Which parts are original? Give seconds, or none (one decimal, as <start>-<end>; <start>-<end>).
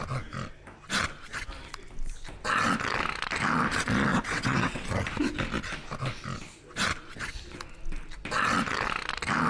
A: 0.0-4.1; 4.9-9.5